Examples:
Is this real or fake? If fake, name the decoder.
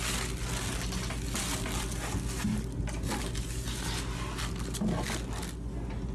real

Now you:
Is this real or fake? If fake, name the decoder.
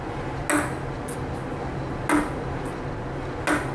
real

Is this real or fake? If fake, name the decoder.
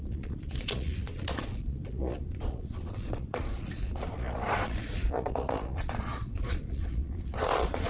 fake, vocoder, Vocos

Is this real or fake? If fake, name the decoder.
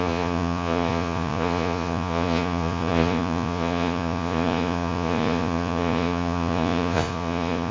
fake, vocoder, Vocos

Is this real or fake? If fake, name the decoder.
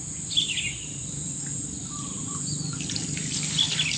real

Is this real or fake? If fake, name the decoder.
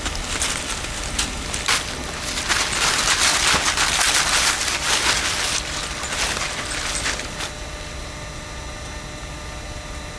real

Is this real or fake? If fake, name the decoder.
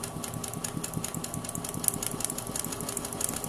real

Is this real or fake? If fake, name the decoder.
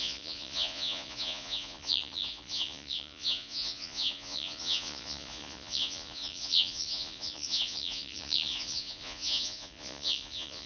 fake, vocoder, Vocos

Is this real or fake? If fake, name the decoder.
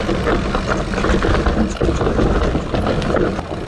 real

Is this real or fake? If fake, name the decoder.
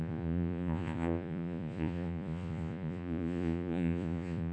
fake, vocoder, Vocos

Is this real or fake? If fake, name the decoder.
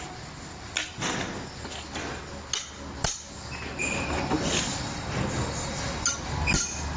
real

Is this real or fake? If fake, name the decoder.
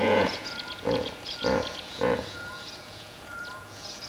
fake, vocoder, Vocos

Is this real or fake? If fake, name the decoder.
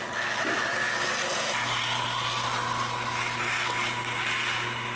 real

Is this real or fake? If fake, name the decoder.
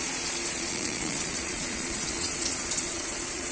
fake, vocoder, Vocos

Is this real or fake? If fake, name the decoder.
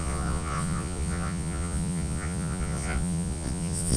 fake, vocoder, Vocos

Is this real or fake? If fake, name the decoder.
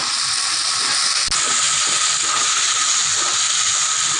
real